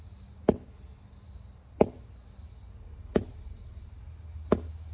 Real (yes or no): yes